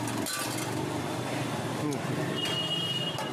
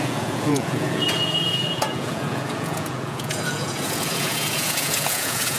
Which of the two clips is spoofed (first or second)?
second